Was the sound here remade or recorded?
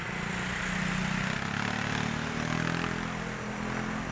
recorded